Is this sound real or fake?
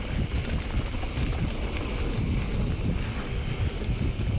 real